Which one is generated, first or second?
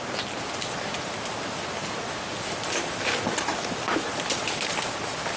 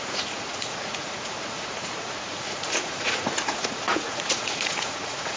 second